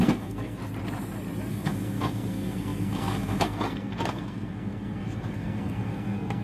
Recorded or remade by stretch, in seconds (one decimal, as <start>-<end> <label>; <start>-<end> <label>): 0.0-0.6 remade; 0.6-1.5 recorded; 1.5-6.4 remade